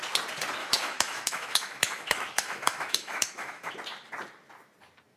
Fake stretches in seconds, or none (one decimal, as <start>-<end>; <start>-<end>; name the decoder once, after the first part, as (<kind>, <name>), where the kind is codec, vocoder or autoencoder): 0.6-3.7 (autoencoder, DAC-VAE)